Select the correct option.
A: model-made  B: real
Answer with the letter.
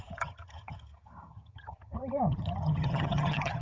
A